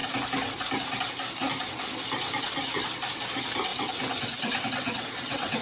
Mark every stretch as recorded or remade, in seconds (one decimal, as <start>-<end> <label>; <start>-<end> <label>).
0.0-3.7 recorded; 3.7-5.6 remade